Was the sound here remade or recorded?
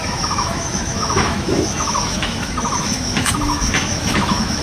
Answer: remade